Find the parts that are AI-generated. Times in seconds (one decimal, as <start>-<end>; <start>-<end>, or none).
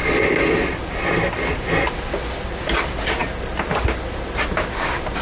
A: none